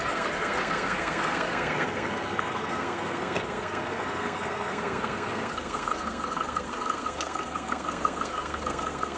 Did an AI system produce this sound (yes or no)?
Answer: yes